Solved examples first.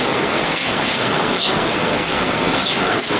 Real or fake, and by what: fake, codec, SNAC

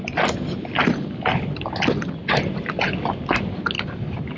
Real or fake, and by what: real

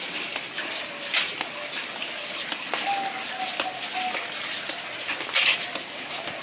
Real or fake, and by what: real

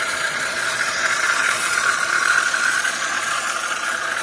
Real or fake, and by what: fake, vocoder, Vocos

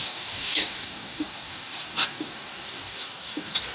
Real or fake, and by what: fake, codec, DAC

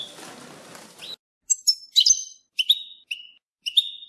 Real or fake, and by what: real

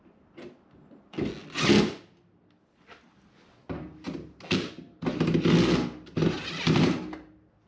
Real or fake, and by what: real